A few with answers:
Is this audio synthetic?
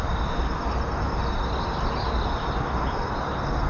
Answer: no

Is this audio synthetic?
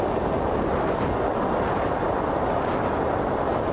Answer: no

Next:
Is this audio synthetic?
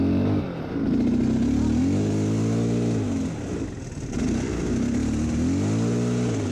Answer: no